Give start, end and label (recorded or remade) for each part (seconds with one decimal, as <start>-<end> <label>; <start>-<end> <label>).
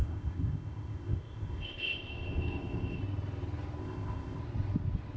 0.0-3.0 remade; 3.0-3.8 recorded; 3.8-4.4 remade; 4.4-5.2 recorded